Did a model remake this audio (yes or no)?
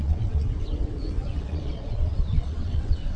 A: yes